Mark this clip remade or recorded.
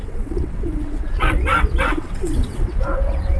remade